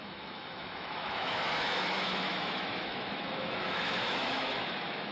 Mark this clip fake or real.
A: fake